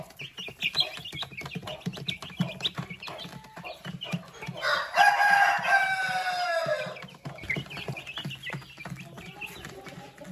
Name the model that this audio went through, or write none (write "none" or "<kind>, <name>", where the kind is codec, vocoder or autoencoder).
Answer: none